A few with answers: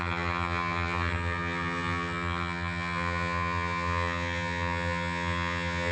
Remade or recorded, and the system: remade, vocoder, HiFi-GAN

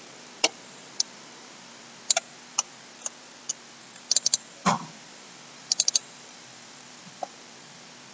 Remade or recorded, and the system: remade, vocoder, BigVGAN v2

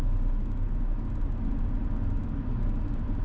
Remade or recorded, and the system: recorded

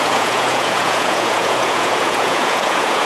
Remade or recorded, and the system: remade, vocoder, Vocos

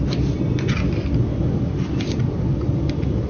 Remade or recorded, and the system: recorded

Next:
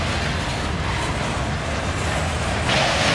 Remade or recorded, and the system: recorded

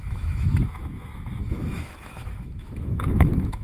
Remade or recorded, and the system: remade, autoencoder, DAC-VAE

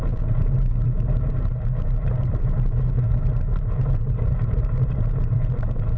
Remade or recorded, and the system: remade, vocoder, BigVGAN v2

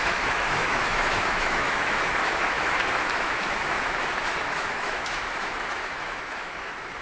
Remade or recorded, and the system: remade, autoencoder, DAC-VAE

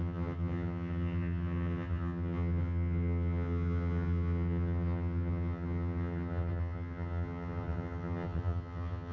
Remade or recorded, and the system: remade, vocoder, HiFi-GAN